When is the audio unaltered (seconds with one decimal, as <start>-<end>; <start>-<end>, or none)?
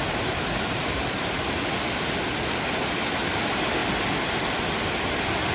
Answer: 0.0-5.5